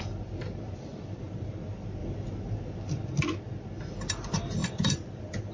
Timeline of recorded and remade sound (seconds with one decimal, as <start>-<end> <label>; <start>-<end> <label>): 0.0-0.9 recorded; 0.9-1.5 remade; 1.5-4.6 recorded; 4.6-5.5 remade